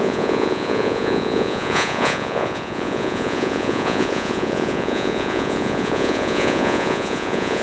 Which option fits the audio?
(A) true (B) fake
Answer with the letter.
B